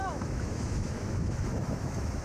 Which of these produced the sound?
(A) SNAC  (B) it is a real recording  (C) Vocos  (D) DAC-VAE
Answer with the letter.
D